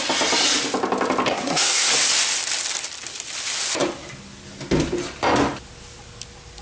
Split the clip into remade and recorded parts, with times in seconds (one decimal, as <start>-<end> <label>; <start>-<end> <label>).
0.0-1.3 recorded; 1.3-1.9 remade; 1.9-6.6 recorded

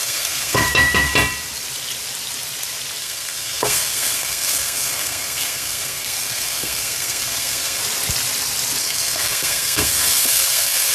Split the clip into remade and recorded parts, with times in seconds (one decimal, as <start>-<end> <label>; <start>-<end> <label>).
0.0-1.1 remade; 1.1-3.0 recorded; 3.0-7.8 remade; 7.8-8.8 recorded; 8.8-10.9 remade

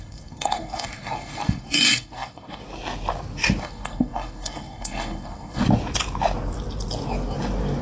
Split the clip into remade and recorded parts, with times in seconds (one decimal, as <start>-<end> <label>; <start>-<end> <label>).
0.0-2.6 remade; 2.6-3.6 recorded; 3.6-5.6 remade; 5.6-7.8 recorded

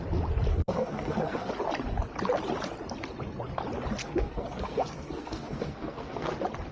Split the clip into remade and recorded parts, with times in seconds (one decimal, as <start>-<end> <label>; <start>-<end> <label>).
0.0-0.5 recorded; 0.5-1.5 remade; 1.5-4.0 recorded; 4.0-6.3 remade; 6.3-6.7 recorded

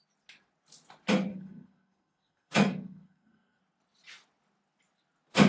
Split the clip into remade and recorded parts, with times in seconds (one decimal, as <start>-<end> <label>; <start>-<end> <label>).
0.0-1.3 recorded; 1.3-3.6 remade; 3.6-5.5 recorded

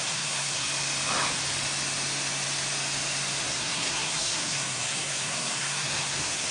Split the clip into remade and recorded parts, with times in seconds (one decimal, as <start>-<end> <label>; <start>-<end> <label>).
0.0-0.7 remade; 0.7-3.4 recorded; 3.4-6.5 remade

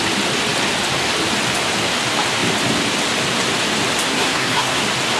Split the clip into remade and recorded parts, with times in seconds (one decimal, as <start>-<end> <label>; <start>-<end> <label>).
0.0-4.1 recorded; 4.1-4.8 remade; 4.8-5.2 recorded

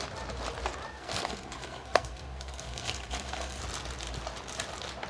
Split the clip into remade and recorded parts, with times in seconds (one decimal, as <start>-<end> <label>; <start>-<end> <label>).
0.0-0.9 recorded; 0.9-3.6 remade; 3.6-5.1 recorded